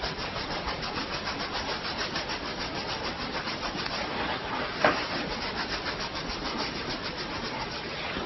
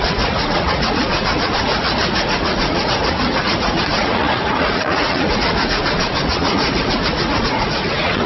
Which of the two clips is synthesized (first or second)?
second